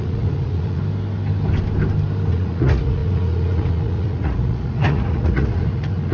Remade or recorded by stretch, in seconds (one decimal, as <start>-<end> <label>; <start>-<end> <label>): 0.0-0.8 remade; 0.8-2.3 recorded; 2.3-6.1 remade